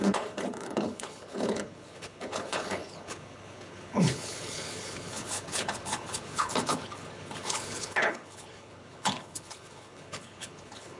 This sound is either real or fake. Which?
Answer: fake